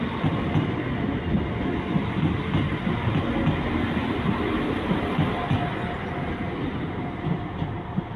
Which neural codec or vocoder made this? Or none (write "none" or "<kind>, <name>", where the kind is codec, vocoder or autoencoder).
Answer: none